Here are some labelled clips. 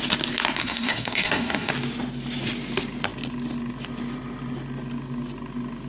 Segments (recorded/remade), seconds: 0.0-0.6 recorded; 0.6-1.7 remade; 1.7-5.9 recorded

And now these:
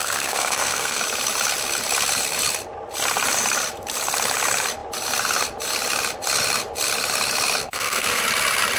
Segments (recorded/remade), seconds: 0.0-1.0 remade; 1.0-7.6 recorded; 7.6-8.2 remade; 8.2-8.8 recorded

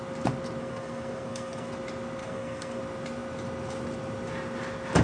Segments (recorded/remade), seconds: 0.0-0.6 recorded; 0.6-1.7 remade; 1.7-2.2 recorded; 2.2-2.8 remade; 2.8-5.0 recorded

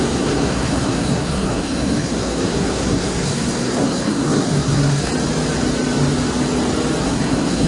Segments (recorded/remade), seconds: 0.0-5.1 remade; 5.1-7.0 recorded; 7.0-7.7 remade

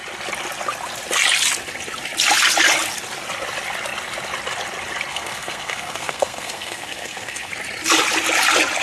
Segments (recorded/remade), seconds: 0.0-5.1 recorded; 5.1-7.5 remade; 7.5-8.8 recorded